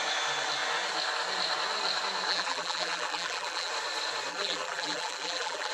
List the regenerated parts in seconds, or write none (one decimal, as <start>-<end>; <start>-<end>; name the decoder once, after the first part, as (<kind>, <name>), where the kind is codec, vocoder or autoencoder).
2.3-3.7 (vocoder, BigVGAN v2); 4.3-5.7